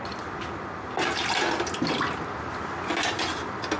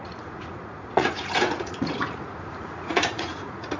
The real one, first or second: first